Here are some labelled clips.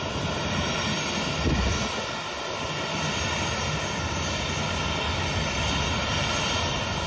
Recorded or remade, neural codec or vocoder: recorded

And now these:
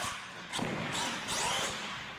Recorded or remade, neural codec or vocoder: recorded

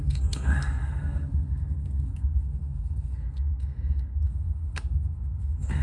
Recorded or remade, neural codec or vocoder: remade, codec, SNAC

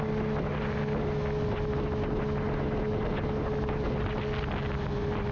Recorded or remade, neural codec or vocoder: recorded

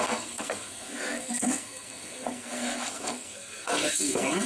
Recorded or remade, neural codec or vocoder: remade, codec, SNAC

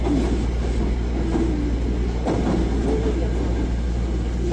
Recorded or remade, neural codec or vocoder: recorded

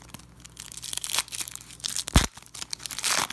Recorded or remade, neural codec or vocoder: recorded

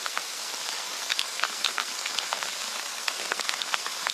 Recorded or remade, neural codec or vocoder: remade, codec, SNAC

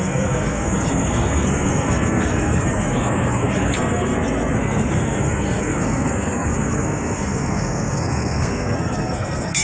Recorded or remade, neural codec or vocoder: remade, codec, SNAC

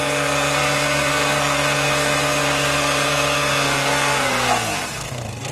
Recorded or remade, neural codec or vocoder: remade, codec, SNAC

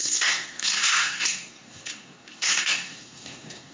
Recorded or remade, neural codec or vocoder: remade, codec, SNAC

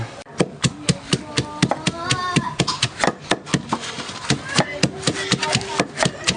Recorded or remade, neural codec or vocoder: recorded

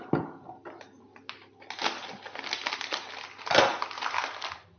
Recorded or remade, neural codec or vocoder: recorded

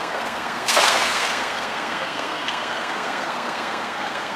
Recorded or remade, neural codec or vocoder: remade, codec, SNAC